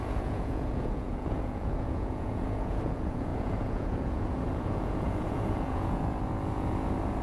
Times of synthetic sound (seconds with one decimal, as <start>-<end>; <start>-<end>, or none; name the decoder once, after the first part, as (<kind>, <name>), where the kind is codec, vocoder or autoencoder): 0.0-7.2 (vocoder, Vocos)